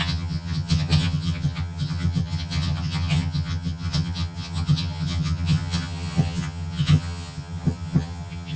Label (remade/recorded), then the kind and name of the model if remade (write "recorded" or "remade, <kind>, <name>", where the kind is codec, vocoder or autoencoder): remade, vocoder, HiFi-GAN